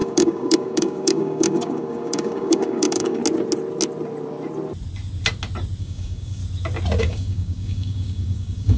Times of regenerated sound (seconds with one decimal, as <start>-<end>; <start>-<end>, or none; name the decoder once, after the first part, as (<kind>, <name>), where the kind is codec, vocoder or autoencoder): 0.0-3.2 (codec, DAC); 5.8-6.4; 7.0-8.8